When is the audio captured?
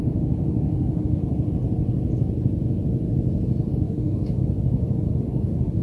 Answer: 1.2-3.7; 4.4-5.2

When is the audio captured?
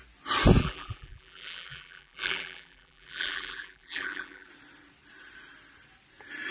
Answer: 0.0-0.6; 4.5-6.5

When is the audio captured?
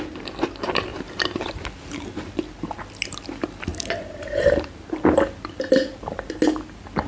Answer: 0.0-0.9; 1.6-7.1